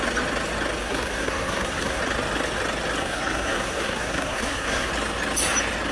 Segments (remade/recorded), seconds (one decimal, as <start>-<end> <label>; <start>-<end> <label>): 0.0-0.8 recorded; 0.8-2.0 remade; 2.0-3.0 recorded; 3.0-4.9 remade; 4.9-5.9 recorded